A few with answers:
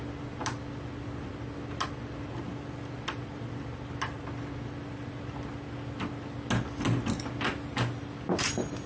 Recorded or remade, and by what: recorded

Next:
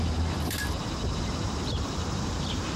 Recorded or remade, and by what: remade, vocoder, BigVGAN v2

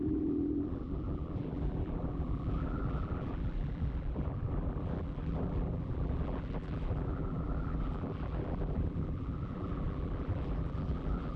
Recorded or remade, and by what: remade, vocoder, BigVGAN v2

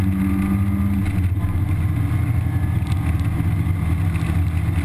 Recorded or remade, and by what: recorded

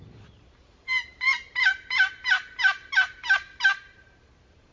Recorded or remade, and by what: remade, vocoder, BigVGAN v2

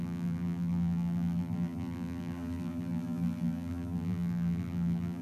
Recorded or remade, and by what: remade, vocoder, BigVGAN v2